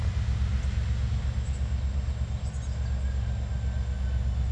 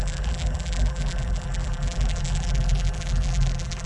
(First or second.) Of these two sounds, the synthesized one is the second